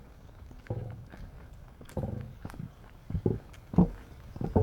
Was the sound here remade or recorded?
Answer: remade